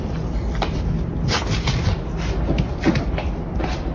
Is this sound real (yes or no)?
yes